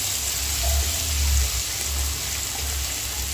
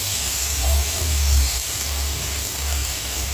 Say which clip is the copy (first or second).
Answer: second